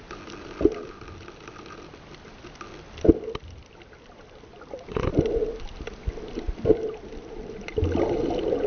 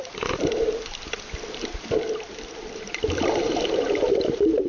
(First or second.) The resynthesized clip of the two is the second